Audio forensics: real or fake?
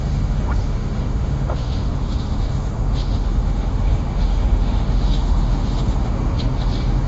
fake